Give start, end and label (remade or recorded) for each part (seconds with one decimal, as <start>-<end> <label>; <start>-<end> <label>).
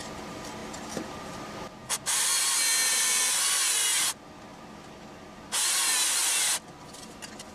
0.0-7.5 recorded